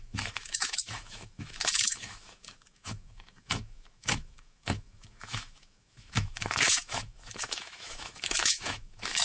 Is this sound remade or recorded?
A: remade